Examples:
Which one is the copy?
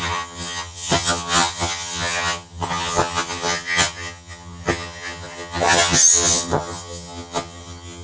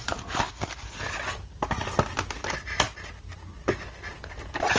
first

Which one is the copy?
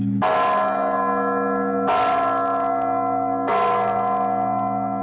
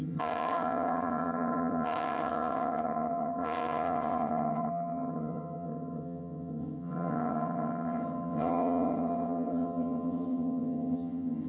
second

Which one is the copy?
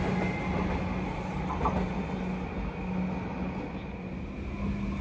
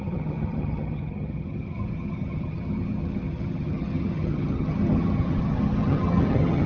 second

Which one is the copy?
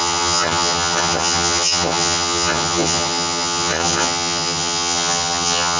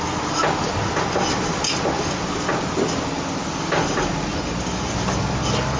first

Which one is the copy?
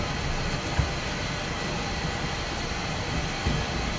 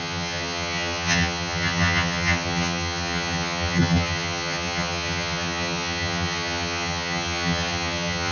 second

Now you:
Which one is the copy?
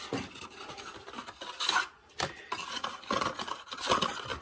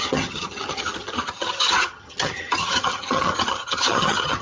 second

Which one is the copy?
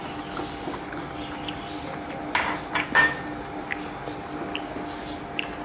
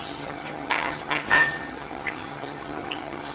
second